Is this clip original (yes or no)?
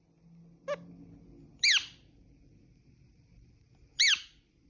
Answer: yes